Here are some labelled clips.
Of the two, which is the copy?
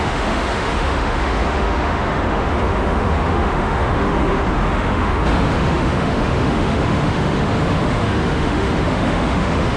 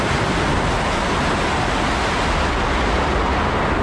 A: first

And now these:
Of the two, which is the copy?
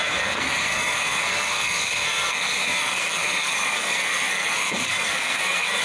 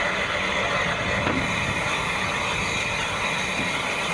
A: first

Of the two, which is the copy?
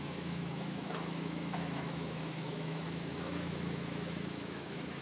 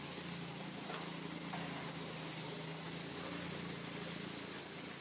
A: first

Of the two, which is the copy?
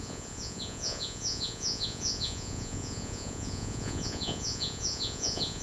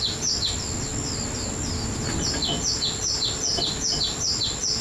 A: first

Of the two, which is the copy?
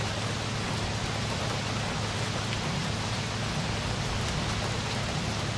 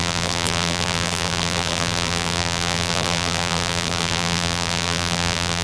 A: second